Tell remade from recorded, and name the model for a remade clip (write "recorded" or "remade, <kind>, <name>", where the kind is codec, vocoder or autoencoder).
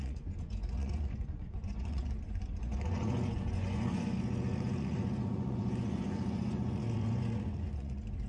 remade, vocoder, Vocos